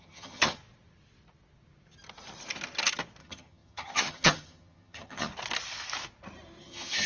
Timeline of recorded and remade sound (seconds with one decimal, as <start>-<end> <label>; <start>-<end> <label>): 0.0-0.6 remade; 0.6-3.2 recorded; 3.2-5.3 remade; 5.3-6.6 recorded; 6.6-7.1 remade